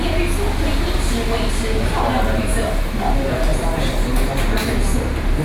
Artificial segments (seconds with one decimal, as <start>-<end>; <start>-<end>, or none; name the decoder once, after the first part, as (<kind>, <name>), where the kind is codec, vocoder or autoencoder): none